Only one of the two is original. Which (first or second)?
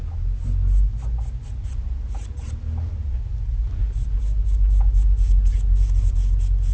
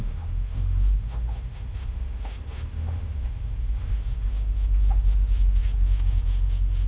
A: first